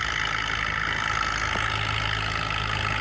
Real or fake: real